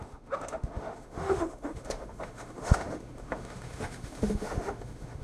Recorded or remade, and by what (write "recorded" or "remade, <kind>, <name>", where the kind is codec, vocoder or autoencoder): remade, autoencoder, DAC-VAE